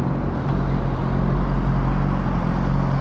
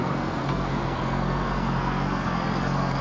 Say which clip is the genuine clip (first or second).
first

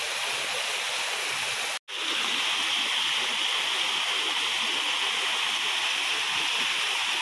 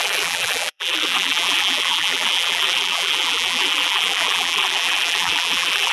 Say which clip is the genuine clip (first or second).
first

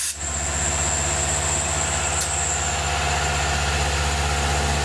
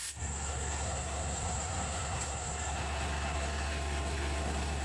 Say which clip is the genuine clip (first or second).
first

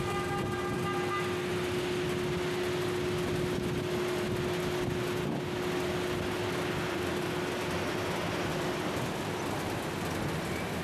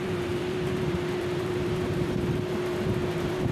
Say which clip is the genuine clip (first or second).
first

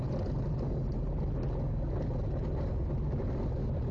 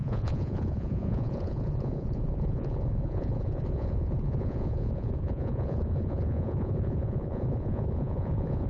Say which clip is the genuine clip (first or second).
first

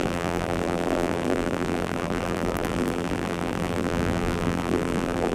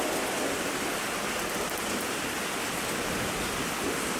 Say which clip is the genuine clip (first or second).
second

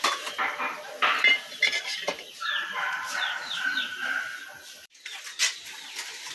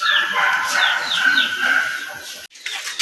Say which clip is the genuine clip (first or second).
second